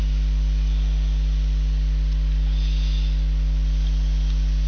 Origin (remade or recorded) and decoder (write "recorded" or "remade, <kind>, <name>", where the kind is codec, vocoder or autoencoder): recorded